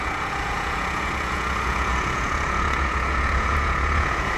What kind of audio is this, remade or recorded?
remade